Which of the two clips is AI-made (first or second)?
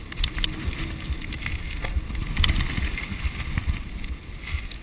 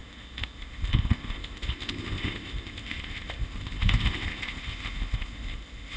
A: second